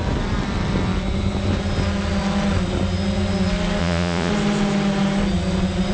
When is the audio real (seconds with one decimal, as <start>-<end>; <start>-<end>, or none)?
0.0-3.8; 4.3-5.9